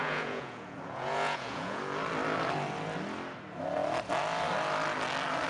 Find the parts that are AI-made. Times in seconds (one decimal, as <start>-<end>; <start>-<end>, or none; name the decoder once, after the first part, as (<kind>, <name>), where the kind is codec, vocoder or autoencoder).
0.0-1.8 (vocoder, Vocos)